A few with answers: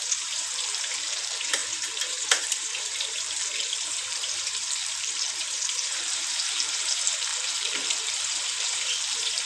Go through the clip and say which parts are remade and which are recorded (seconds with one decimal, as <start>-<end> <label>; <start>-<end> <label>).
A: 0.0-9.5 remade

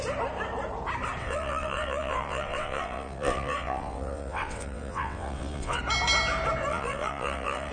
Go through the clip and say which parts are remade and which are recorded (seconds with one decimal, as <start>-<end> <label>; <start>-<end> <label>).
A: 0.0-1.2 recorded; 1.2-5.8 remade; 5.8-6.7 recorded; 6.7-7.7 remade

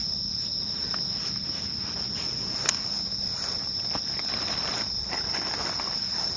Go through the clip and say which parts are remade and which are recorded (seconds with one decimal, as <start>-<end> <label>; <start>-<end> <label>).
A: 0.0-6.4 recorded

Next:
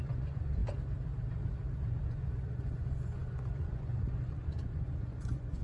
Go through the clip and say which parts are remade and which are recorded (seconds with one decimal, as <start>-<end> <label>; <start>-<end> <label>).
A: 0.0-0.6 remade; 0.6-1.8 recorded; 1.8-5.6 remade

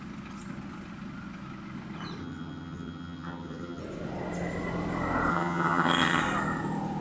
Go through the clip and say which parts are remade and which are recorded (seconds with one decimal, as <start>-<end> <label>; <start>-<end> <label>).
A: 0.0-2.2 recorded; 2.2-3.8 remade; 3.8-5.3 recorded; 5.3-6.2 remade; 6.2-7.0 recorded

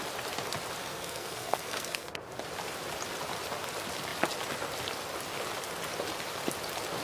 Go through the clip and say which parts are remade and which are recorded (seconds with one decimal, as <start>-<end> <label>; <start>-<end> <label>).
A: 0.0-0.8 recorded; 0.8-2.1 remade; 2.1-7.0 recorded

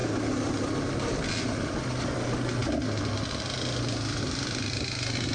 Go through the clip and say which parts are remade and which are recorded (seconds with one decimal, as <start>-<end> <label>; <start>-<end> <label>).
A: 0.0-5.3 recorded